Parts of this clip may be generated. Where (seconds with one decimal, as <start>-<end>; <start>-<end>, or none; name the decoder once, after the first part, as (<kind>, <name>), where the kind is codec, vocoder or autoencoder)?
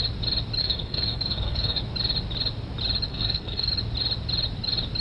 0.6-1.8 (codec, SNAC); 3.1-3.7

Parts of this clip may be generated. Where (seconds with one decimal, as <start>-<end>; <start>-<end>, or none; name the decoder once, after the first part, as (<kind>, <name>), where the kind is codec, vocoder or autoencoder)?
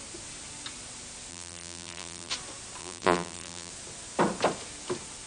1.3-2.3 (vocoder, BigVGAN v2); 2.8-3.7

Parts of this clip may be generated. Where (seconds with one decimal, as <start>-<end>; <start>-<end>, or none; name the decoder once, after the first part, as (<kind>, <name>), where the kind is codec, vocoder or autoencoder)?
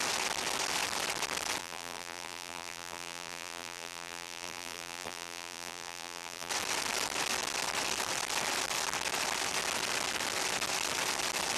1.6-6.5 (vocoder, BigVGAN v2)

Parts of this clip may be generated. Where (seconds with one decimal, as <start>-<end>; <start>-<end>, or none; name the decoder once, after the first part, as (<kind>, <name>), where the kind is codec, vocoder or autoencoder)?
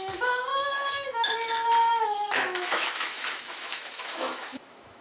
0.5-1.5 (autoencoder, DAC-VAE); 1.9-5.0